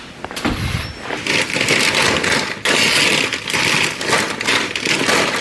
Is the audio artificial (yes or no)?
no